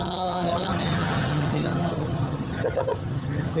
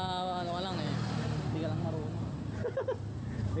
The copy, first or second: first